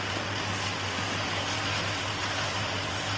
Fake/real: real